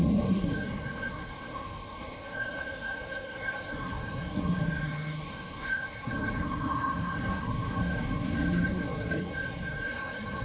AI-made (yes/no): yes